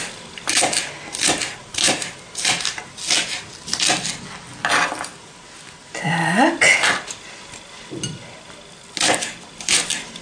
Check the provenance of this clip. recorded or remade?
recorded